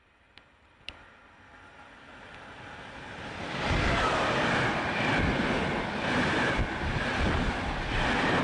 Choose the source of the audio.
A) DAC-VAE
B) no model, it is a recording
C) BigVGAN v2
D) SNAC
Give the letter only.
B